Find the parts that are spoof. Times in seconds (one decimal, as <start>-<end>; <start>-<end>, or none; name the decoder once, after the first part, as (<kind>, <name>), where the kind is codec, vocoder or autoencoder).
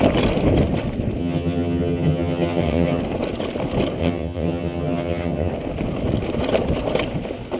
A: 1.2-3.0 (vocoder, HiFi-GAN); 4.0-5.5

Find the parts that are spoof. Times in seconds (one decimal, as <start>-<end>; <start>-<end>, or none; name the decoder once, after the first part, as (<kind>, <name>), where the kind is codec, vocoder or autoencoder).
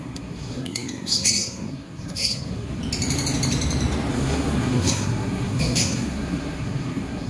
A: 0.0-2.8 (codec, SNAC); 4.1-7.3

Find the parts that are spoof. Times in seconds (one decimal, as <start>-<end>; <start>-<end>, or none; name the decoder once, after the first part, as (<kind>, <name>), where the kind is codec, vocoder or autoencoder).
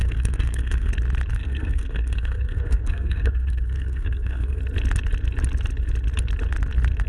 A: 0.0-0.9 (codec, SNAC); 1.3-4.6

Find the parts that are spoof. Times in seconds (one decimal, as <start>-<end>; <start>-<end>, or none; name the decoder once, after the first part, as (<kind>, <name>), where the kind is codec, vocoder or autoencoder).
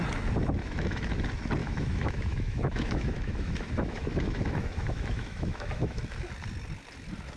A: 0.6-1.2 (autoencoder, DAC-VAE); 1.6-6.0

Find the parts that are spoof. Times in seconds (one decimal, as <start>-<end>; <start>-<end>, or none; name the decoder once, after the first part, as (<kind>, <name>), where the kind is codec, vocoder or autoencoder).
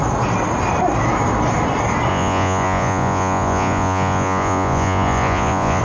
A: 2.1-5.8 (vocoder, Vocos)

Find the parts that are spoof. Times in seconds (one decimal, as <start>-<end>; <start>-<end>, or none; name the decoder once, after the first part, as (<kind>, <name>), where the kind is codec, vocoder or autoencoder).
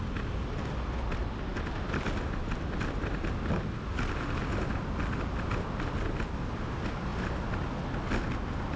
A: none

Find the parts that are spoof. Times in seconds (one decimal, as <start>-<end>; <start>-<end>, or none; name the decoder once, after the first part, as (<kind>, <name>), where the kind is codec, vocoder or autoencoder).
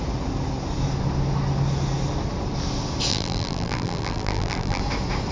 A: 3.1-4.8 (vocoder, BigVGAN v2)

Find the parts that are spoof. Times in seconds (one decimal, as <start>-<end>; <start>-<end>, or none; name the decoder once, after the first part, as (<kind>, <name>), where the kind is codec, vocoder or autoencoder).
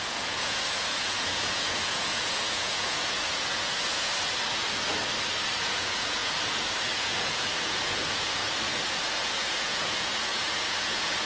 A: 0.0-4.1 (vocoder, Vocos); 5.6-8.4; 9.0-11.3